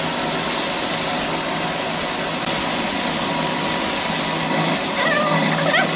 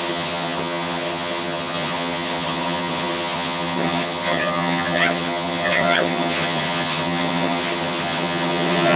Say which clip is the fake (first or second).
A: second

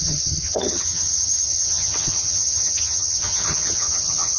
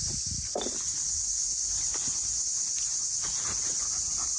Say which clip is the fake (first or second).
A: first